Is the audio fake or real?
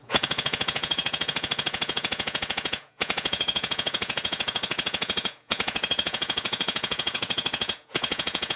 fake